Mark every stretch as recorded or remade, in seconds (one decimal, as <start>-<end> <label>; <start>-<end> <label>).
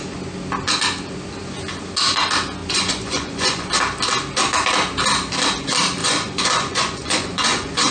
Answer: 0.0-2.6 recorded; 2.6-3.7 remade; 3.7-6.0 recorded; 6.0-7.9 remade